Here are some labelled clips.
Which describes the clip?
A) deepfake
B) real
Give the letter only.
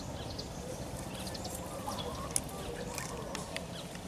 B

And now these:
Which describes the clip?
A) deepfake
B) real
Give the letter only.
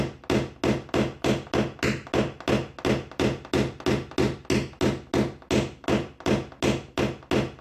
B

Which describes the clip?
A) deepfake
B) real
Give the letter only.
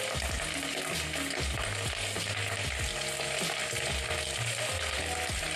B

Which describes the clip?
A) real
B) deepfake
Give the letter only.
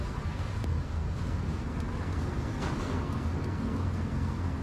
B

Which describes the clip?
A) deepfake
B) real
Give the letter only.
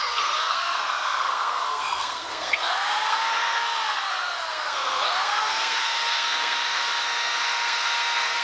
A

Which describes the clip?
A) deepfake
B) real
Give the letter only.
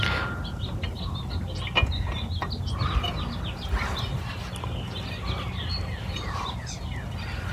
B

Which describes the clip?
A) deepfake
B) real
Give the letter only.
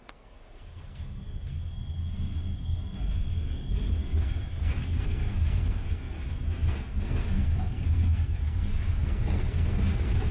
A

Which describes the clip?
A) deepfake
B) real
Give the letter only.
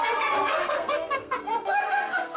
A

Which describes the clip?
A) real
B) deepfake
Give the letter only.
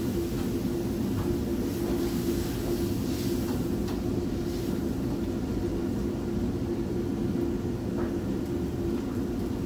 A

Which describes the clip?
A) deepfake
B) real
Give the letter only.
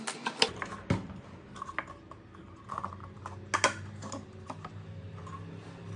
B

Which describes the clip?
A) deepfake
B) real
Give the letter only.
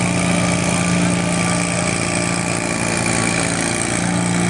B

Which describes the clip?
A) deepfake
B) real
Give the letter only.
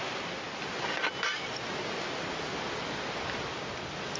B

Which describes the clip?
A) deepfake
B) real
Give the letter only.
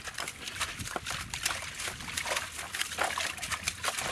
B